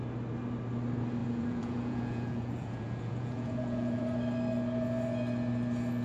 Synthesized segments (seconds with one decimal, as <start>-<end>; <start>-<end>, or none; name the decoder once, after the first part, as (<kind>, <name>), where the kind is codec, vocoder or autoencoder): 1.2-4.0 (vocoder, Vocos)